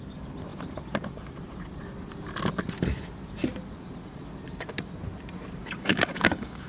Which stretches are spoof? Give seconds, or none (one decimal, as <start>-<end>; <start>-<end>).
5.6-6.7